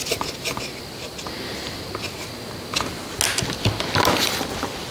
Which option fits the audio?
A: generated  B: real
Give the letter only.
B